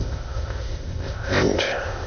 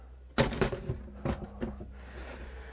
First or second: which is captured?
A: second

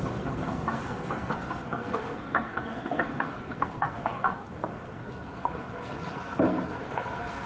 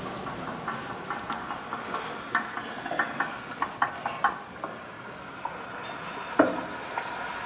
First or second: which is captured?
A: second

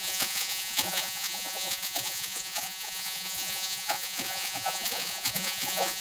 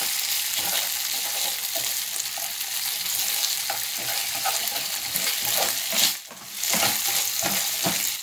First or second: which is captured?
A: second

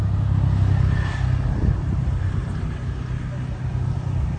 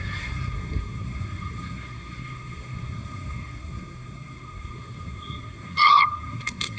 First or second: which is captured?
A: first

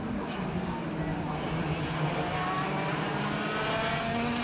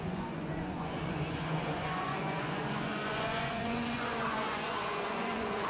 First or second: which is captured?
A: first